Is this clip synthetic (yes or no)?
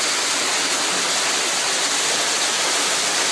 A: no